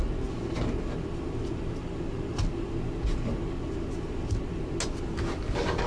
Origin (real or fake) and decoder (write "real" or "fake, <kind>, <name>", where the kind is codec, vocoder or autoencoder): real